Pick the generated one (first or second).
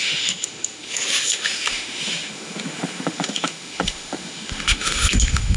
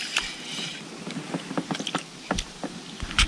first